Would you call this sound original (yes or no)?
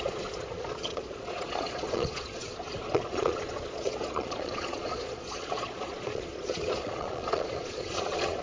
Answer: no